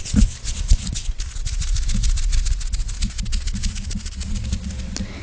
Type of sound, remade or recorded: recorded